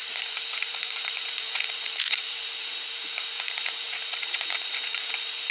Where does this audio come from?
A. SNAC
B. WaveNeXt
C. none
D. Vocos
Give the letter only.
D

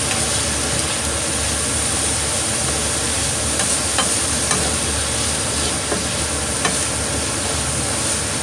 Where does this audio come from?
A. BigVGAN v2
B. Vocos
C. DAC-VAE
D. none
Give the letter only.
D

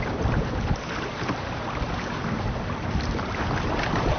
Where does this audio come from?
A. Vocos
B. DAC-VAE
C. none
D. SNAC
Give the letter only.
C